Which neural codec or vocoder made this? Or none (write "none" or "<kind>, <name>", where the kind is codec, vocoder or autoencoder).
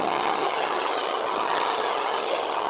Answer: vocoder, HiFi-GAN